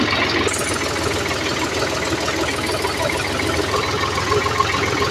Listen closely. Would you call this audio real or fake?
real